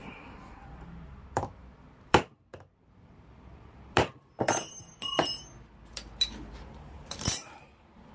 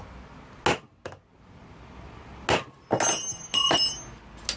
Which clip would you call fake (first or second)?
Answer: first